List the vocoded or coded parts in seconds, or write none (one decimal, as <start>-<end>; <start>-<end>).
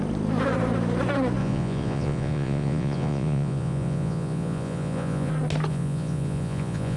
1.4-5.3; 5.7-7.0